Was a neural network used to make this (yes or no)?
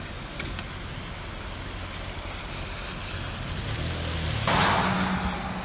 no